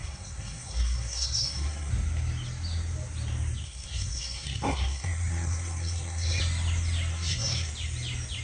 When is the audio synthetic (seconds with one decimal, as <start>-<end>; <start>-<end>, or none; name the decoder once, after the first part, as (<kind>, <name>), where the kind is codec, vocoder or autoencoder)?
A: 0.0-1.9 (codec, SNAC); 3.6-6.4; 7.1-7.7